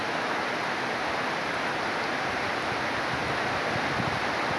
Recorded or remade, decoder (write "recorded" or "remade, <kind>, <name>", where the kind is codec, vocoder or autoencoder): recorded